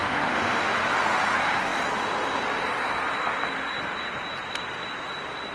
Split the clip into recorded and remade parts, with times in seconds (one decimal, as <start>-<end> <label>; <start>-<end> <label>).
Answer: 0.0-0.8 remade; 0.8-5.5 recorded

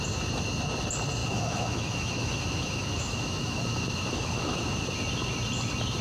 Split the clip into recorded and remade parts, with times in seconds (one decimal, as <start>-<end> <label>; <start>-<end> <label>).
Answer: 0.0-1.2 recorded; 1.2-4.8 remade; 4.8-6.0 recorded

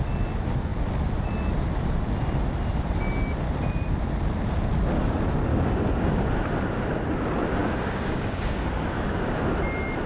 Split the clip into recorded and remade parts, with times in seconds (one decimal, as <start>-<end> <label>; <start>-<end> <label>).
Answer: 0.0-5.5 recorded; 5.5-6.1 remade; 6.1-7.6 recorded; 7.6-9.4 remade; 9.4-10.1 recorded